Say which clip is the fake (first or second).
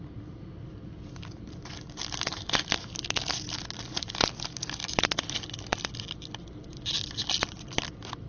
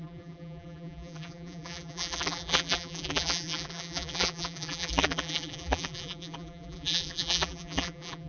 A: second